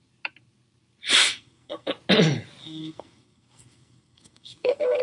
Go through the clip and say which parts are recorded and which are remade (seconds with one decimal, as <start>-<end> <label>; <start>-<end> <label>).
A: 0.0-1.2 recorded; 1.2-1.9 remade; 1.9-2.6 recorded; 2.6-5.0 remade